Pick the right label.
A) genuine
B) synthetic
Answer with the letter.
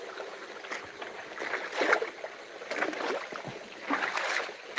A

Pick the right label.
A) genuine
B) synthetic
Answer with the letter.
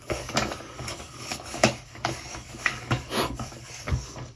B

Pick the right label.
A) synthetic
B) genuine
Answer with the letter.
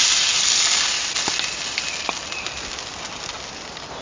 B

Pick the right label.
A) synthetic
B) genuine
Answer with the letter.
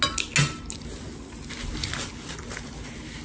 B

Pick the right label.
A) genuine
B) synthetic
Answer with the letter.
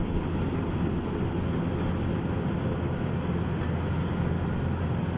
A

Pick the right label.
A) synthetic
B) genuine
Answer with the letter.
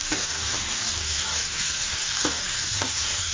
A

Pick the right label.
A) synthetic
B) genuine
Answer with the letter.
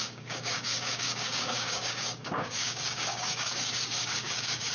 A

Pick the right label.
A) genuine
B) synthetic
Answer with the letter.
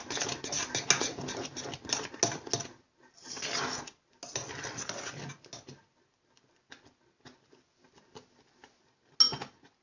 A